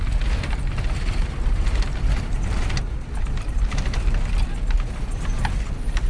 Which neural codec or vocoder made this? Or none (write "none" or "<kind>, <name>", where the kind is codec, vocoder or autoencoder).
none